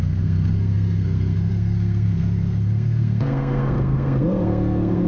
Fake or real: fake